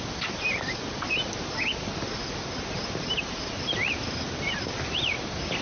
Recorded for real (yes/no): yes